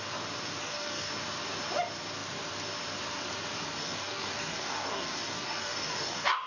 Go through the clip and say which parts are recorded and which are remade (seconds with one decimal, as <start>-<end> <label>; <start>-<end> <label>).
0.0-0.6 recorded; 0.6-1.1 remade; 1.1-3.8 recorded; 3.8-6.5 remade